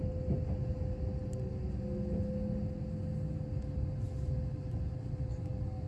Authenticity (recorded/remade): recorded